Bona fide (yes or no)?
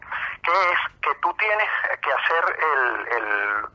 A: yes